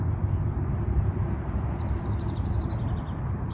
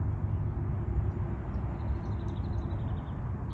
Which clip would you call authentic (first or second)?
second